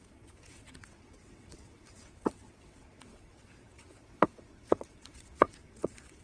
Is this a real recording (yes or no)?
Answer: no